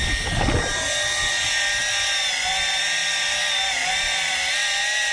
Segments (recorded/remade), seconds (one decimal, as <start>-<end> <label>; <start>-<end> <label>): 0.0-3.0 recorded; 3.0-4.3 remade; 4.3-5.1 recorded